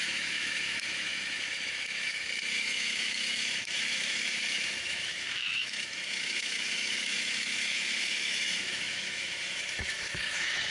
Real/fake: fake